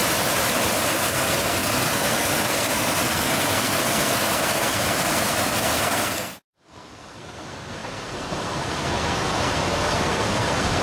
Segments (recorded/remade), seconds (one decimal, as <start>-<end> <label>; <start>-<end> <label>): 0.0-0.9 recorded; 0.9-10.8 remade